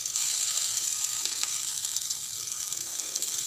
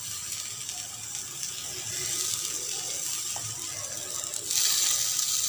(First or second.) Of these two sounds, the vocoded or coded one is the first